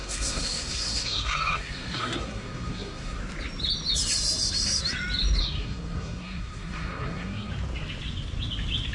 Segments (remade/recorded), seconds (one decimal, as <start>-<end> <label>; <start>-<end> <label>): 0.0-3.2 remade; 3.2-5.4 recorded; 5.4-7.5 remade; 7.5-8.9 recorded